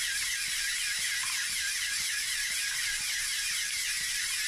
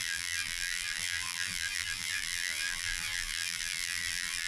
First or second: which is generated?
second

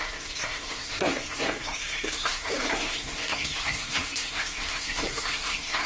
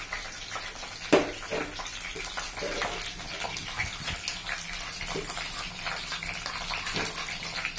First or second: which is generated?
first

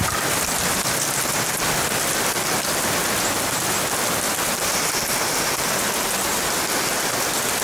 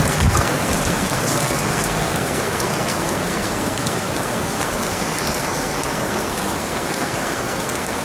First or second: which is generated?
second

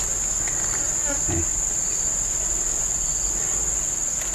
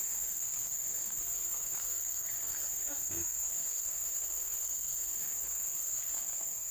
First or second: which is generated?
second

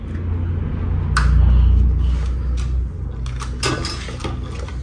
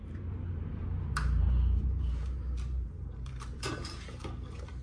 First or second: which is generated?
second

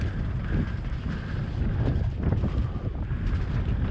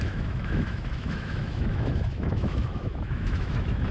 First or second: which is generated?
second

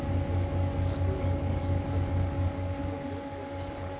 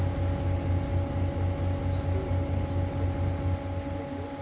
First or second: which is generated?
first